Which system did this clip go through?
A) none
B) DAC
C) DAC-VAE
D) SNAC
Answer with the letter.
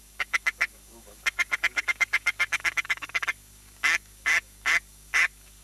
B